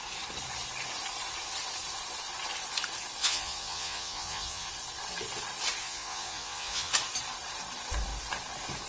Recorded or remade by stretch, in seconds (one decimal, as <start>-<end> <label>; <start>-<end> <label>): 0.0-3.2 recorded; 3.2-4.7 remade; 4.7-5.8 recorded; 5.8-6.9 remade; 6.9-8.9 recorded